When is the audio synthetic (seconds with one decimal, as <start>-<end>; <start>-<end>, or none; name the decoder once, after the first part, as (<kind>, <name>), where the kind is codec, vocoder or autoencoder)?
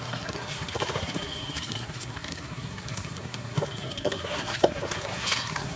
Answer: 0.0-5.8 (codec, SNAC)